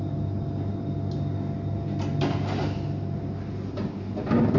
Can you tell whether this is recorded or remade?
recorded